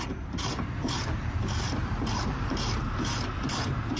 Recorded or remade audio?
remade